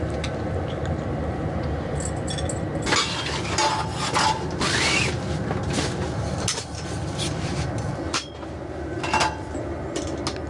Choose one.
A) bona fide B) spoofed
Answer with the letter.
A